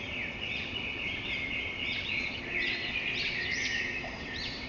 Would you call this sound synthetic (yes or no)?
yes